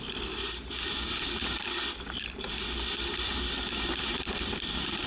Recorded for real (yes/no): yes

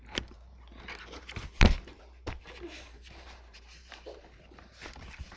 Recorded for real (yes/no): no